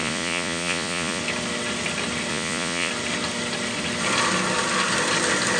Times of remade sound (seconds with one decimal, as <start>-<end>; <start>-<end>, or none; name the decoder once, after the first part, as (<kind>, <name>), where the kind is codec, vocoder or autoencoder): 0.0-1.2 (vocoder, Vocos); 2.3-2.9